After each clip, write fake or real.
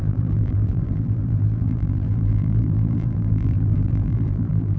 fake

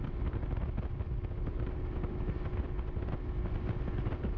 real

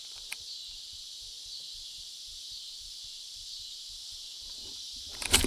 fake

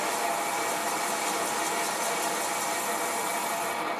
real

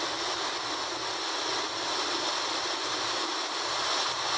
real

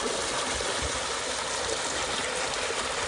real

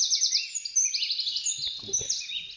real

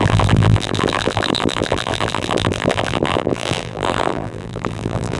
fake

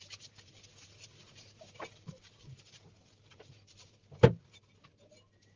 fake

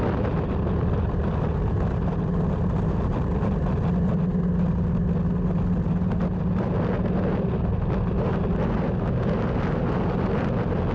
real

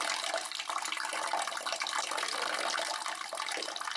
fake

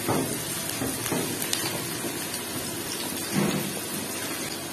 real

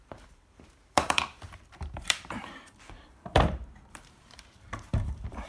fake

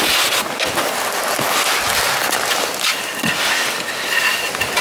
real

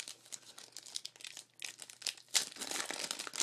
real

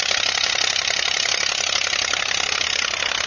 fake